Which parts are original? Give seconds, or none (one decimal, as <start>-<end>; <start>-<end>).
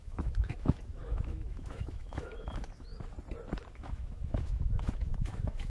2.9-3.7